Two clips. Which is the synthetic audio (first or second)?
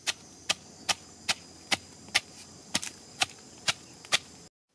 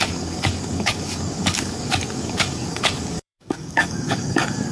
second